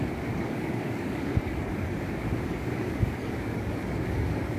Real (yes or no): no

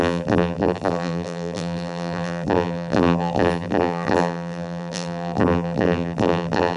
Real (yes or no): no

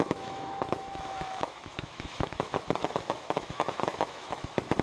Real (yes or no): no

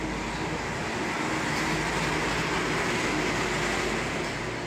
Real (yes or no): yes